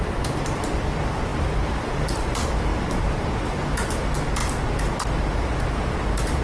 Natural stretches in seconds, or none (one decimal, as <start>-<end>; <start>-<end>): 4.4-6.4